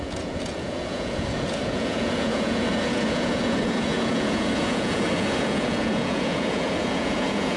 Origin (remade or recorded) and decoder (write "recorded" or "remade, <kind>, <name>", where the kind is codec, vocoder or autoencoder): remade, vocoder, Vocos